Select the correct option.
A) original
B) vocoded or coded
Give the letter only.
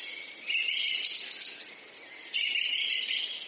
A